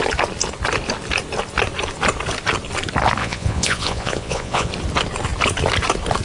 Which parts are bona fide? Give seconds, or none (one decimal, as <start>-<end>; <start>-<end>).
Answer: 0.0-3.2; 4.7-6.2